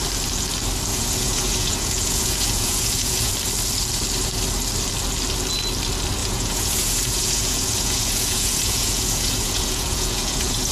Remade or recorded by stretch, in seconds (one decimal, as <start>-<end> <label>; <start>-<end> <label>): 0.0-0.9 recorded; 0.9-3.3 remade; 3.3-6.2 recorded; 6.2-10.7 remade